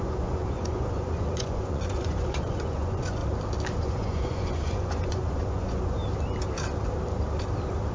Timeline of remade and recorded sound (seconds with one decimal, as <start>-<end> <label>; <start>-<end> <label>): 0.0-3.2 remade; 3.2-3.8 recorded; 3.8-6.0 remade; 6.0-7.9 recorded